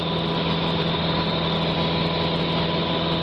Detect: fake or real real